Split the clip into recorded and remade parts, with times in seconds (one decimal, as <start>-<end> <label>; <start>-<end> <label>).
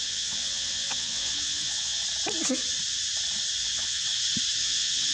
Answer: 0.0-2.0 remade; 2.0-3.6 recorded; 3.6-4.1 remade; 4.1-4.6 recorded; 4.6-5.1 remade